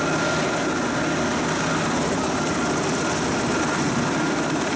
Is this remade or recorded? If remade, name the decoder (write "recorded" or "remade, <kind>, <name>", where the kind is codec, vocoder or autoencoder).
remade, vocoder, BigVGAN v2